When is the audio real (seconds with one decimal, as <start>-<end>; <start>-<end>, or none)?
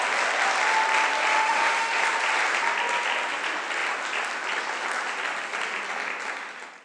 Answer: 0.0-1.3; 2.0-6.8